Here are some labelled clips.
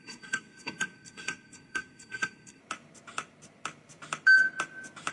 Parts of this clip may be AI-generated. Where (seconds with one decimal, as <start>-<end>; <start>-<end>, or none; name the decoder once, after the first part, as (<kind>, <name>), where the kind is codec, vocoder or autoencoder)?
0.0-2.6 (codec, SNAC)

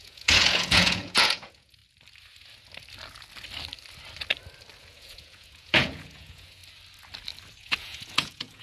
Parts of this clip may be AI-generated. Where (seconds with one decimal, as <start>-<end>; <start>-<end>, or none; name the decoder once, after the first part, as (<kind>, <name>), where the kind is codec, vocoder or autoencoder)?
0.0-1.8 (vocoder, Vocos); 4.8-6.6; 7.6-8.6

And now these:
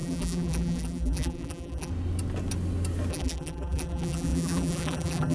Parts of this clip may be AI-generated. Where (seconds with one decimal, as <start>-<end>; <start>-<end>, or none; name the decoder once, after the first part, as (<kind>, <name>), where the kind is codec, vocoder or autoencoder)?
0.0-1.9 (vocoder, BigVGAN v2); 3.1-5.3

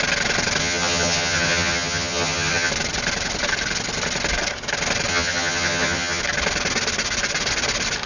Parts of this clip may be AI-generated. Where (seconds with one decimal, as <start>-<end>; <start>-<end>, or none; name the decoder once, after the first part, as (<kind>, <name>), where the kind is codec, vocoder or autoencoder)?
0.6-2.7 (vocoder, HiFi-GAN); 5.1-6.2

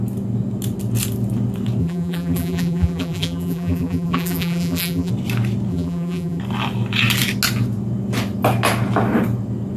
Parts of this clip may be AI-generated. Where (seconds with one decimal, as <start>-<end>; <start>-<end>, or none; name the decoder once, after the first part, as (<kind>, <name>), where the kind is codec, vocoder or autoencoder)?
1.8-5.1 (vocoder, BigVGAN v2); 5.7-6.4

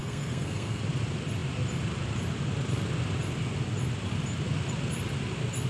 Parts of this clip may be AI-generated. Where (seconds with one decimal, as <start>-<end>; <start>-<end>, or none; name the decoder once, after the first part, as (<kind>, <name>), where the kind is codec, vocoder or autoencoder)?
0.0-0.8 (codec, SNAC)